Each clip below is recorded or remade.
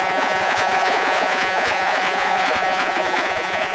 remade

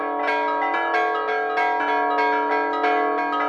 recorded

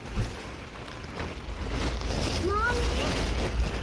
recorded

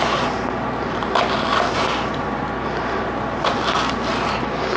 recorded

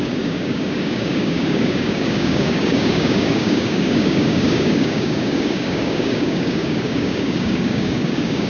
remade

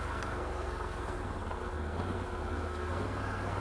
remade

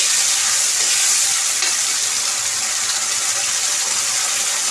recorded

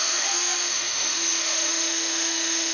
remade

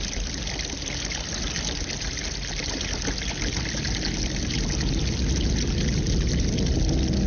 recorded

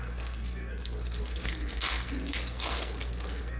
remade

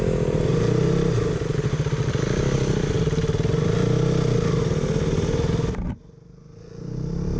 recorded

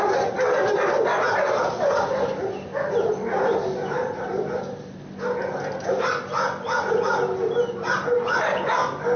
recorded